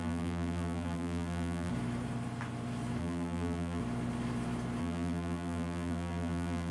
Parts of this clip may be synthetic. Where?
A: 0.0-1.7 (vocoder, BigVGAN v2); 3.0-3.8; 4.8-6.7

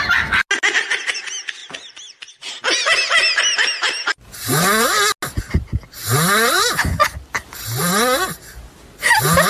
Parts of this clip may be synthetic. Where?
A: none

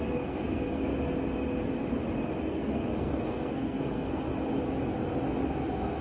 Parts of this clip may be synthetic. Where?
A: 0.0-0.9 (codec, SNAC); 2.5-4.3